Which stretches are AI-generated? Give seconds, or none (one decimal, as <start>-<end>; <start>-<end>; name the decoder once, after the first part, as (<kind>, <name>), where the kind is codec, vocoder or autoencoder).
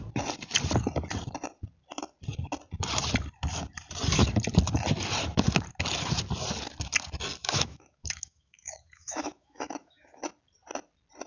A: 7.4-10.2 (autoencoder, DAC-VAE)